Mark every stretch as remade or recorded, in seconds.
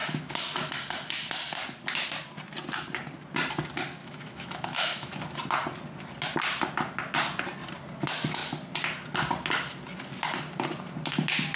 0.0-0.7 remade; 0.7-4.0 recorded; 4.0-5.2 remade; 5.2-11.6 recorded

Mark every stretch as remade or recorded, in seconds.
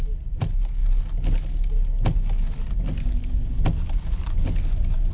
0.0-5.1 recorded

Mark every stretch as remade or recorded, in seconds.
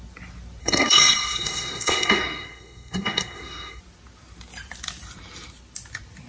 0.0-0.6 recorded; 0.6-3.8 remade; 3.8-6.3 recorded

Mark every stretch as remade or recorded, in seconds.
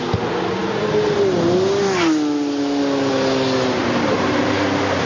0.0-3.8 recorded; 3.8-4.4 remade; 4.4-5.1 recorded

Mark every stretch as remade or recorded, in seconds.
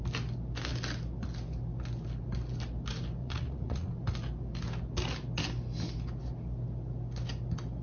0.0-3.2 recorded; 3.2-3.9 remade; 3.9-7.8 recorded